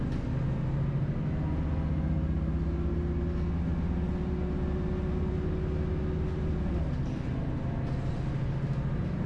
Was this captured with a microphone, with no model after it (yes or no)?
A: yes